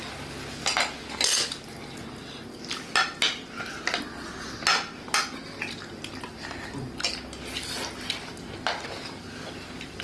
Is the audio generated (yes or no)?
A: no